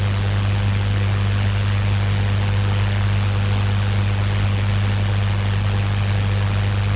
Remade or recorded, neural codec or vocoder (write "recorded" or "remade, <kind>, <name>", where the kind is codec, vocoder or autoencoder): recorded